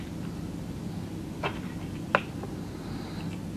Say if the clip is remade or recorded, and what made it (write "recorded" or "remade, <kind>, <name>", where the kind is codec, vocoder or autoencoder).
recorded